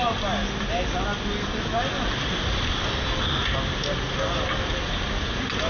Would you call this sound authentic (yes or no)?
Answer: yes